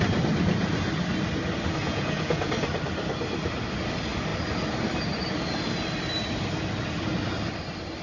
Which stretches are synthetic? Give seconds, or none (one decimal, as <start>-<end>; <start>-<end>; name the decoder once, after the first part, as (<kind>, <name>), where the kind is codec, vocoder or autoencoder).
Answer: 1.8-2.5 (vocoder, Vocos)